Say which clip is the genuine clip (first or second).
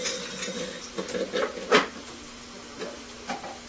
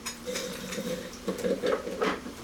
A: first